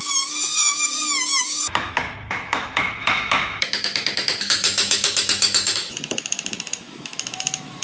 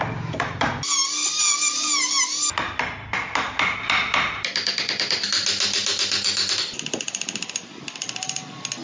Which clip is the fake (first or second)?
first